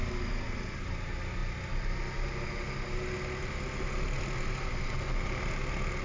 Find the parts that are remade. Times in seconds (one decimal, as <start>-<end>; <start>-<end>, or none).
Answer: none